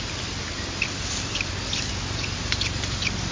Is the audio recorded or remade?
recorded